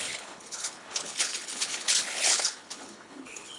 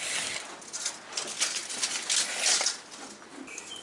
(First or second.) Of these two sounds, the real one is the second